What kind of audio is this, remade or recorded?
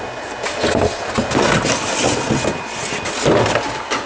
recorded